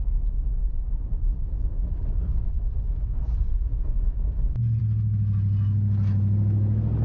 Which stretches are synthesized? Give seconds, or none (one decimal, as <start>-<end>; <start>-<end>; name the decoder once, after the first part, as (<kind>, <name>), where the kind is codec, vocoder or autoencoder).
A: none